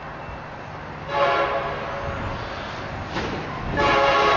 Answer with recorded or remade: recorded